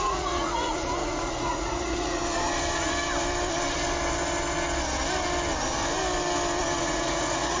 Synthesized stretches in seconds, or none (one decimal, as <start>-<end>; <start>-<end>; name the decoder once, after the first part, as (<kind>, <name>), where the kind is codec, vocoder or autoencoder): 0.0-2.2 (vocoder, Vocos); 6.8-7.6